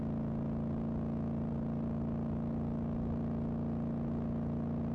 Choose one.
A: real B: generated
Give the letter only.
A